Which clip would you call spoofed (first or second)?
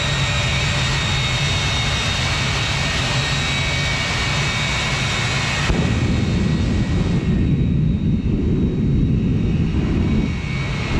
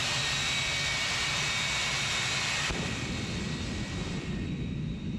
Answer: second